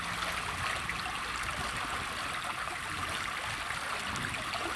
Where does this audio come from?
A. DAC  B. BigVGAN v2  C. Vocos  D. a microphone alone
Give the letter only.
D